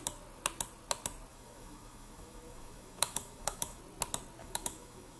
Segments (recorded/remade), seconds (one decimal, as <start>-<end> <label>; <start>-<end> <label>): 0.0-1.3 recorded; 1.3-3.8 remade; 3.8-4.4 recorded; 4.4-5.2 remade